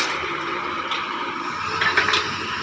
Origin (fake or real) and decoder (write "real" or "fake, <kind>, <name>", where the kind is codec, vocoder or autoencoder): fake, vocoder, BigVGAN v2